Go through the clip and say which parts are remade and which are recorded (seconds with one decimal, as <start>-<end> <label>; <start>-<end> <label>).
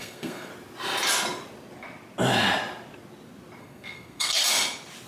0.0-0.5 remade; 0.5-3.6 recorded; 3.6-4.4 remade; 4.4-5.1 recorded